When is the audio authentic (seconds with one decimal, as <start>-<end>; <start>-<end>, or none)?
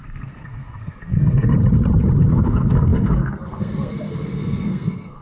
1.5-2.3